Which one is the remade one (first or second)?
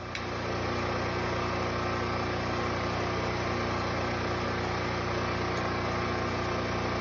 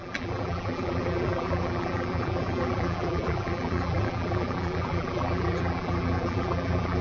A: second